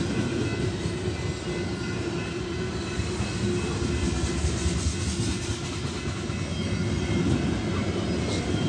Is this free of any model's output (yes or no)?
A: yes